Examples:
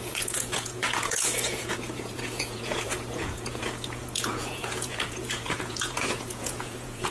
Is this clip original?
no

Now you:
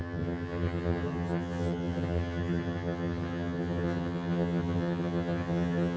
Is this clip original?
no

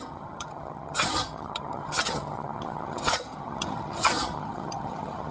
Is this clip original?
no